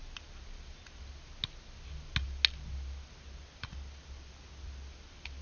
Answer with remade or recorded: recorded